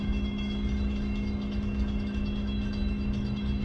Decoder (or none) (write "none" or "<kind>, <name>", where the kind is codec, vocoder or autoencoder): autoencoder, DAC-VAE